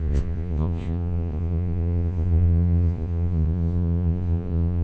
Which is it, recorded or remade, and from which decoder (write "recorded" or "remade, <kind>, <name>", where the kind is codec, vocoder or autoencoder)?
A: remade, vocoder, Vocos